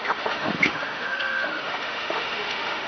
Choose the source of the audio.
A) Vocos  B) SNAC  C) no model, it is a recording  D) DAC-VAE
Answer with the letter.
D